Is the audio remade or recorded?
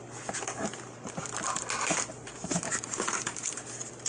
recorded